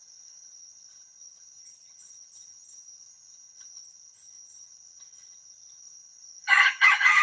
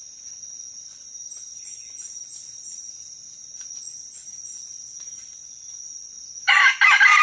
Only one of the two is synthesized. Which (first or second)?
first